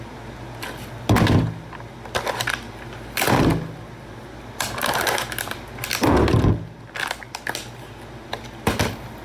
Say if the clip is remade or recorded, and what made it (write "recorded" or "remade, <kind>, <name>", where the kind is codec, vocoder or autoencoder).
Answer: recorded